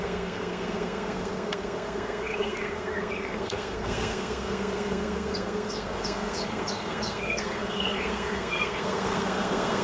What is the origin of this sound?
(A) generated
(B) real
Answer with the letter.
A